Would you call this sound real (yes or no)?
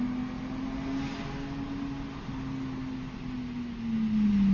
yes